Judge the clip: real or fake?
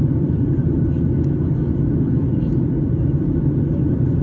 real